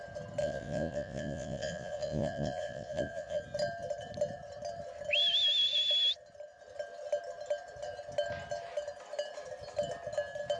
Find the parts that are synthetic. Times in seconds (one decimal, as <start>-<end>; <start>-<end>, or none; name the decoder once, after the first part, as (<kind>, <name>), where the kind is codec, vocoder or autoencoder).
0.4-3.4 (vocoder, Vocos)